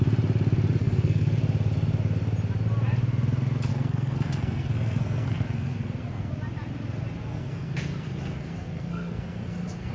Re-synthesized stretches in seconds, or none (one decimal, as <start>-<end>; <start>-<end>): 0.8-1.4; 3.7-6.3; 7.3-9.9